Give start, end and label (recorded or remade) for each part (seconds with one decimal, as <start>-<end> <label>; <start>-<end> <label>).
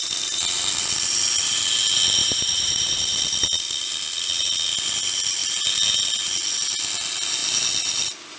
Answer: 0.0-2.2 recorded; 2.2-3.0 remade; 3.0-8.4 recorded